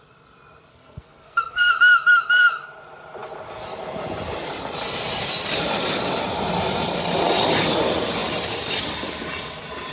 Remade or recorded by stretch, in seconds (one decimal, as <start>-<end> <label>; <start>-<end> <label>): 0.0-0.7 recorded; 0.7-1.7 remade; 1.7-9.9 recorded